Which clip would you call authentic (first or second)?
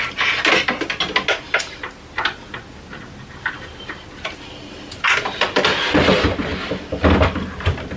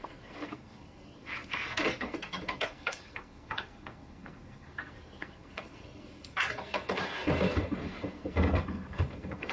first